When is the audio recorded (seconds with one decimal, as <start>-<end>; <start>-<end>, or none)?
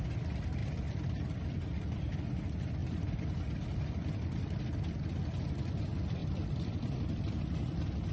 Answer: 0.0-0.6; 2.1-2.8; 4.6-6.2; 7.2-8.1